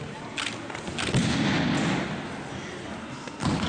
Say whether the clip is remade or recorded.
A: recorded